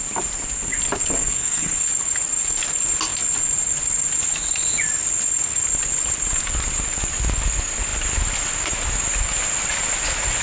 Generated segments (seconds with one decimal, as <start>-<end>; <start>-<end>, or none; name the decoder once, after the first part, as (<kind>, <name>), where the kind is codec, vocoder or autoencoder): 1.2-1.9 (codec, SNAC)